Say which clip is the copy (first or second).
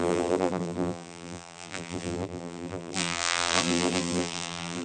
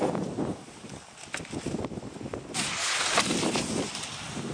first